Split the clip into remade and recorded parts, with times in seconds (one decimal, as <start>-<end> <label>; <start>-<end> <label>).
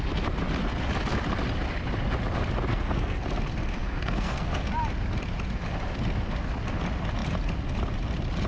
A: 0.0-2.7 recorded; 2.7-3.2 remade; 3.2-3.8 recorded; 3.8-4.7 remade; 4.7-8.5 recorded